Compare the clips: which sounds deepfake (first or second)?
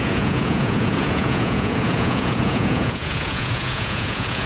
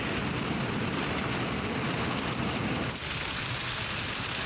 first